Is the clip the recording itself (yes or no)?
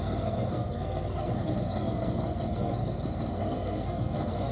no